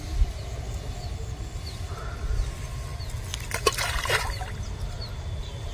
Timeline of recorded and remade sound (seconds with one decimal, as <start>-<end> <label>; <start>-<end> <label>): 0.0-5.7 recorded